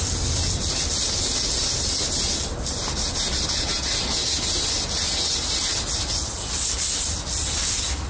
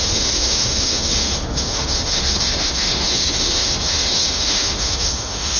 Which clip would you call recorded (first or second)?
first